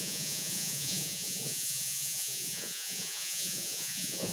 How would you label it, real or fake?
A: fake